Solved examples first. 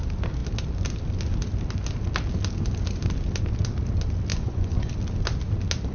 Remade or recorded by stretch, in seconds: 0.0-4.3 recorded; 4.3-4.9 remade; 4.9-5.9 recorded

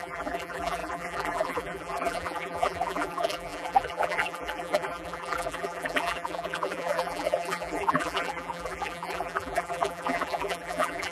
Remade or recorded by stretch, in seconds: 0.0-11.1 remade

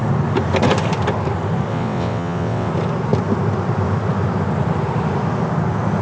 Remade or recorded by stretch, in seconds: 0.0-1.7 recorded; 1.7-2.7 remade; 2.7-6.0 recorded

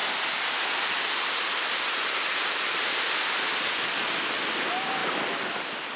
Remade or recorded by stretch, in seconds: 0.0-6.0 recorded

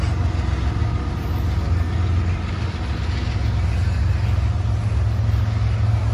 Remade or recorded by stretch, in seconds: 0.0-6.1 recorded

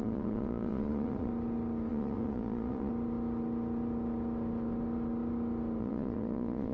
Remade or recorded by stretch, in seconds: 0.0-1.3 remade; 1.3-1.9 recorded; 1.9-2.9 remade; 2.9-5.8 recorded; 5.8-6.7 remade